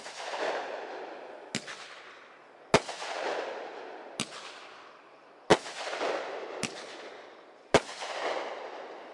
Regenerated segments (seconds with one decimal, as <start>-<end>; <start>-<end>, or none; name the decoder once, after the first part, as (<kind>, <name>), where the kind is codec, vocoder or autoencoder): none